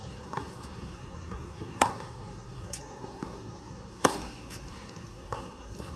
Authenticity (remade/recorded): remade